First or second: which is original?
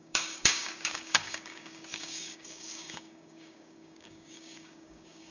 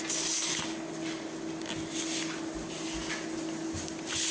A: second